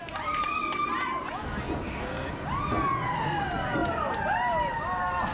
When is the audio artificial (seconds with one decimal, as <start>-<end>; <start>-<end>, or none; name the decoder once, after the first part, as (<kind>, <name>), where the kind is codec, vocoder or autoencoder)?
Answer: 3.8-4.5 (vocoder, BigVGAN v2)